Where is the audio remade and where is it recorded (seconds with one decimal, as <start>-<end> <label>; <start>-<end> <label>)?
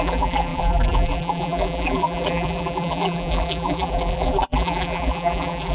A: 0.0-5.7 remade